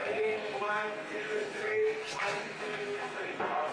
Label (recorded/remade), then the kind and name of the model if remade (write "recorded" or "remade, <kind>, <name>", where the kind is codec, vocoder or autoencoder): remade, codec, SNAC